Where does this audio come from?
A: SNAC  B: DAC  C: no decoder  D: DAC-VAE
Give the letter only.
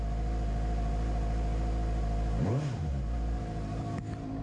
C